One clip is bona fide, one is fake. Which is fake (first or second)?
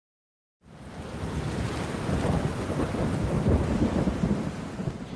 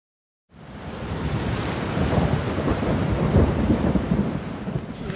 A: first